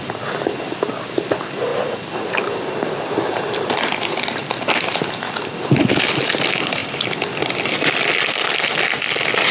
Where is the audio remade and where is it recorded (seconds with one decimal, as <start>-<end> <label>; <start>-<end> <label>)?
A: 0.0-6.8 recorded; 6.8-8.5 remade; 8.5-9.5 recorded